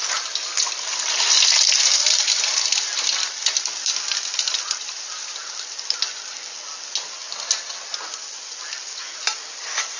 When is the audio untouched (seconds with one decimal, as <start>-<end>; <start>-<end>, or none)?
0.0-10.0